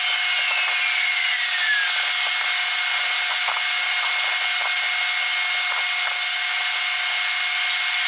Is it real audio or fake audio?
real